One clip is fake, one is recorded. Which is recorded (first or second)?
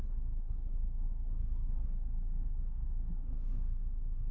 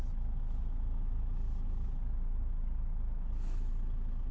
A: second